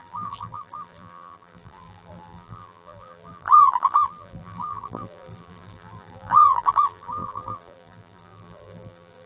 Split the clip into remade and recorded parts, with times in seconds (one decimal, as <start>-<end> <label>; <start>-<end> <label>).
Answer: 0.0-9.3 remade